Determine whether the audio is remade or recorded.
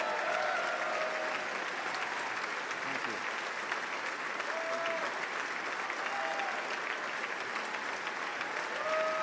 recorded